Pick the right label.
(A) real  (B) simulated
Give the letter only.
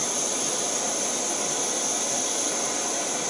A